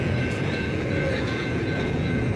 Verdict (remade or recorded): remade